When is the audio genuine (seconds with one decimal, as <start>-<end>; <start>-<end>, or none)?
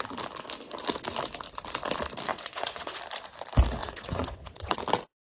0.0-2.3; 3.0-3.8; 4.8-5.4